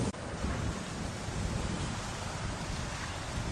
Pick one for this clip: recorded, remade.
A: recorded